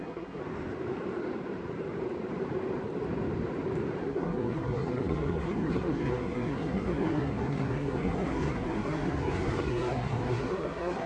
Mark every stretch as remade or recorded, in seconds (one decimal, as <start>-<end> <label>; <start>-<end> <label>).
0.0-0.4 remade; 0.4-4.0 recorded; 4.0-11.1 remade